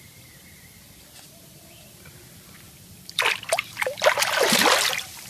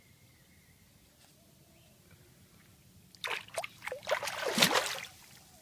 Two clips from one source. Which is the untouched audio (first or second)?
second